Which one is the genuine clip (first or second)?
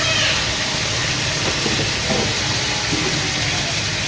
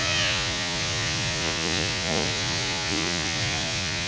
first